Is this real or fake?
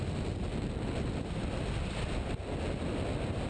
real